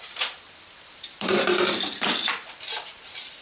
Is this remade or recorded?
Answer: remade